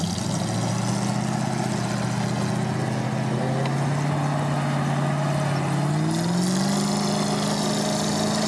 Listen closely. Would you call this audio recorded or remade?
recorded